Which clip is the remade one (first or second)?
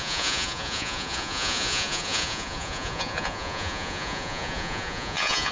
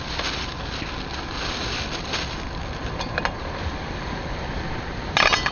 first